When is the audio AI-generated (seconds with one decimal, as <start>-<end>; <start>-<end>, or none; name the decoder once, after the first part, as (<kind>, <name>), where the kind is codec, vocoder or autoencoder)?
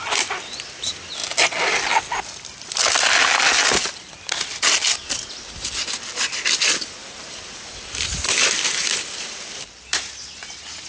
7.0-10.2 (vocoder, BigVGAN v2)